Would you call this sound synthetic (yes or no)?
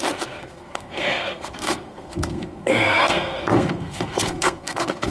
yes